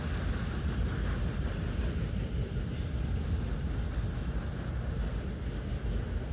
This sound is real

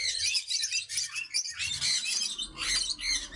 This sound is real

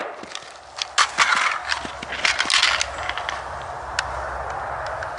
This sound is real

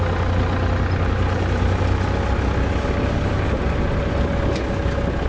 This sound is real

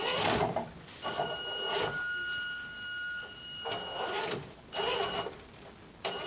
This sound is real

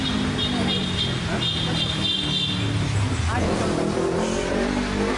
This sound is real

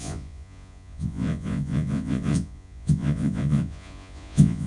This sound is fake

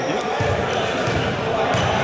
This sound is real